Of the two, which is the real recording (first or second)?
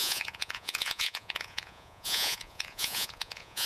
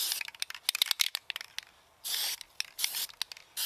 second